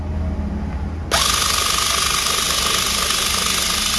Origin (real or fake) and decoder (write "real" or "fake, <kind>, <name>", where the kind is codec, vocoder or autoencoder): real